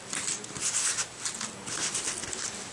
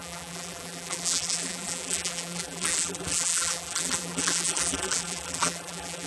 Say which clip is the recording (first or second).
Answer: first